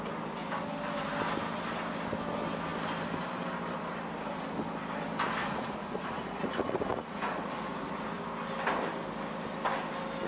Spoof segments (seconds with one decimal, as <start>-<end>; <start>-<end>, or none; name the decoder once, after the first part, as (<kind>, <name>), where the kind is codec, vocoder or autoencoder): 5.4-8.1 (vocoder, Vocos)

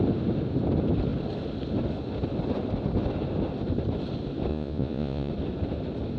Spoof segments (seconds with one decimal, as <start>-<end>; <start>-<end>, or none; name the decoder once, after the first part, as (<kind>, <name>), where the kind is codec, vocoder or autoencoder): 4.5-5.3 (vocoder, Vocos)

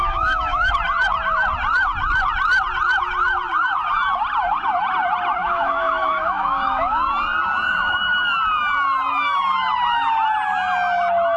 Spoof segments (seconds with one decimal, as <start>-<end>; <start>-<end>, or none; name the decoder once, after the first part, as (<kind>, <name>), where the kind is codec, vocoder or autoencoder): 0.0-0.7 (autoencoder, DAC-VAE); 5.4-7.0

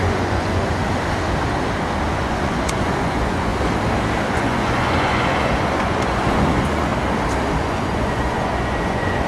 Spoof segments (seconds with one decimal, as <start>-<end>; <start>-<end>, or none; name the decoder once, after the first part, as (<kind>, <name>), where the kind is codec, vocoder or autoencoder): 0.0-0.8 (vocoder, Vocos); 2.1-3.5; 4.3-6.9; 7.6-9.3

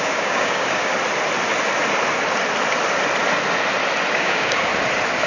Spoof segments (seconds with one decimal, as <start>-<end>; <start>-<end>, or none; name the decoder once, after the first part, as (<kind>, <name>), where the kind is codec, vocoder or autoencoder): 0.0-0.9 (codec, DAC); 4.1-4.7